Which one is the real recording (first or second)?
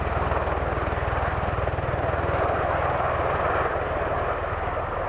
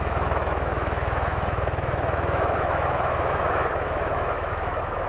first